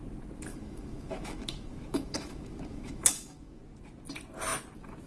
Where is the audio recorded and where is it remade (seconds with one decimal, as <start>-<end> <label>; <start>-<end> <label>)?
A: 0.0-0.5 recorded; 0.5-3.6 remade; 3.6-5.1 recorded